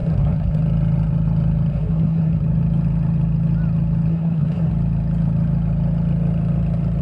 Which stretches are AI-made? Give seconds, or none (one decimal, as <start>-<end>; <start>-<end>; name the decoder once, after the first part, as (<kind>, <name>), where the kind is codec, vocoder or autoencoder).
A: 0.0-0.6 (codec, SNAC); 1.7-2.4; 4.1-4.7

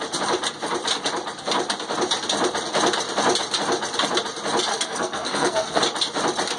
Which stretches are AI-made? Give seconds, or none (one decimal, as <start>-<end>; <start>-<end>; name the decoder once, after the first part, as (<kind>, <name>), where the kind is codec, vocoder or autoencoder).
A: 4.7-5.8 (codec, SNAC)

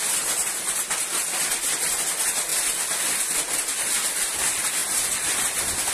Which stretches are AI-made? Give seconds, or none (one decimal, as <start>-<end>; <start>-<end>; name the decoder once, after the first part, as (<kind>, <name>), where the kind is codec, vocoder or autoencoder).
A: none

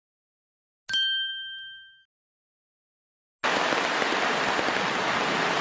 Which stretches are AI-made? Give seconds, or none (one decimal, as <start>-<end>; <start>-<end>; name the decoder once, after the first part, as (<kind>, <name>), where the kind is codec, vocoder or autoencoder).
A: none